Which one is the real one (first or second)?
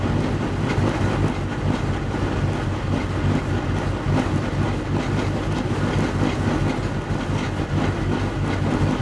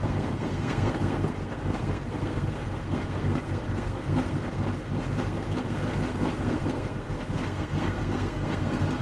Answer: first